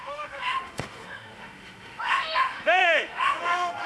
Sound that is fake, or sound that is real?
fake